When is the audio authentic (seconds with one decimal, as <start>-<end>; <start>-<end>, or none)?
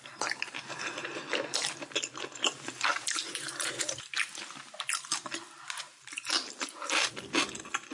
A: 0.0-2.9; 4.1-5.9; 7.1-7.9